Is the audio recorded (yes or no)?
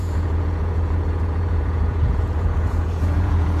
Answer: no